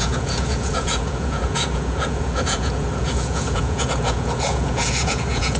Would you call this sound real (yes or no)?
no